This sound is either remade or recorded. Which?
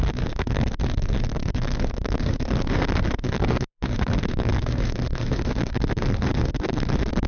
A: remade